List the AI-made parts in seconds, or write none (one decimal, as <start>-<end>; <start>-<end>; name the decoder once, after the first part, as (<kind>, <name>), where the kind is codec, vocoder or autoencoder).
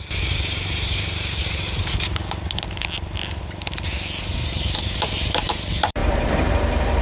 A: 0.0-2.2 (vocoder, BigVGAN v2); 4.2-7.0